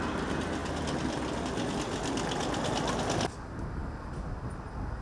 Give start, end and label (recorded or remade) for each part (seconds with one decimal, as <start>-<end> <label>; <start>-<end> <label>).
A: 0.0-5.0 recorded